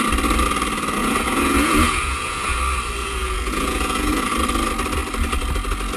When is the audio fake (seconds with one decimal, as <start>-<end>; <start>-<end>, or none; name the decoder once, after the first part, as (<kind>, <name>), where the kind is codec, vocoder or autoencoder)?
1.0-2.6 (vocoder, Vocos); 3.0-4.1